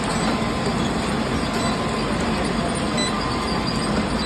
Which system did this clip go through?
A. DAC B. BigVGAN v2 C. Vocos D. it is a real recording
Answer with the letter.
D